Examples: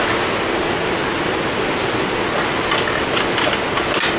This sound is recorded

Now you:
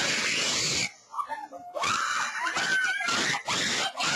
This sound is recorded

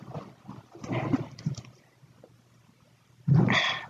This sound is remade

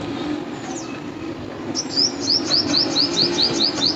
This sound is recorded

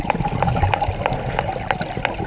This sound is recorded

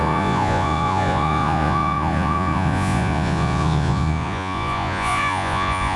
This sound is remade